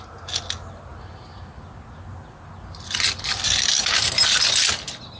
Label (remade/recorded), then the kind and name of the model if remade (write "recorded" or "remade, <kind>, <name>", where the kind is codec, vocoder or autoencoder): recorded